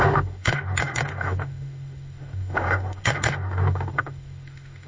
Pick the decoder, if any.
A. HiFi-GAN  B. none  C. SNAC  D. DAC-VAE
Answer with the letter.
D